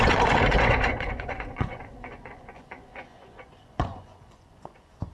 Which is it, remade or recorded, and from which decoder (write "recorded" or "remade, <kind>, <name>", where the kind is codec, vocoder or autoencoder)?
remade, vocoder, Vocos